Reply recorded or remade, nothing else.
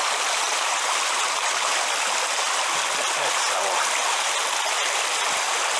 recorded